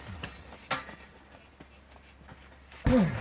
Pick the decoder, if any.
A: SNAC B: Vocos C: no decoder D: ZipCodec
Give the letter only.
C